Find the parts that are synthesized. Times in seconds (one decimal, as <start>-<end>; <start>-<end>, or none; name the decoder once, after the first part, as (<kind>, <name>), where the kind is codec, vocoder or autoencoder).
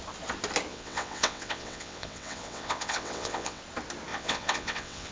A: 0.7-3.6 (vocoder, WaveNeXt); 4.1-5.1